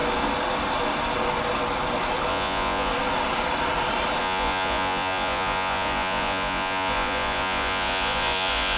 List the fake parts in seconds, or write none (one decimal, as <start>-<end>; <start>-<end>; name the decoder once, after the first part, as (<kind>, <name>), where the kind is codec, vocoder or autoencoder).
2.3-2.9 (vocoder, Vocos); 4.2-8.8